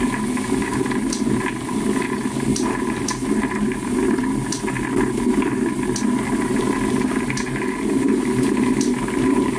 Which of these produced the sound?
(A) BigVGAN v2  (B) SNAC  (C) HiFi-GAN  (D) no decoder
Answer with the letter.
D